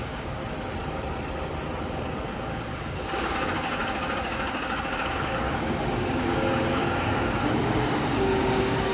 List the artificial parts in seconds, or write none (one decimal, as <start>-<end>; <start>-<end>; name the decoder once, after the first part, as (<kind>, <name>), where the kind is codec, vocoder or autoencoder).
0.0-0.4 (codec, DAC); 1.9-8.9